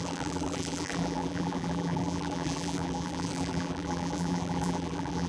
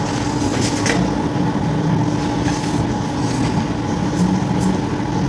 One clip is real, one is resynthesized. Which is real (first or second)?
second